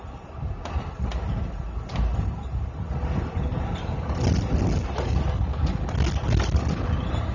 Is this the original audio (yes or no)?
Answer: yes